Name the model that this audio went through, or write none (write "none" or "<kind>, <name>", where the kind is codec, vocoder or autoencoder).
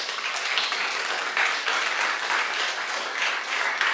codec, DAC